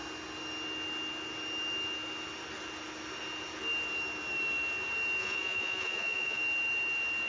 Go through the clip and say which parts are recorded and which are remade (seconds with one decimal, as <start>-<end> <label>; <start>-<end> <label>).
0.0-5.2 recorded; 5.2-6.4 remade; 6.4-7.3 recorded